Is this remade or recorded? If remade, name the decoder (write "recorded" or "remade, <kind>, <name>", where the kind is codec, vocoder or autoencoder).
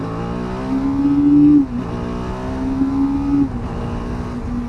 recorded